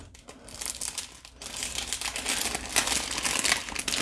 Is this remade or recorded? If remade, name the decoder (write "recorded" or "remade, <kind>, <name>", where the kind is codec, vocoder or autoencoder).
recorded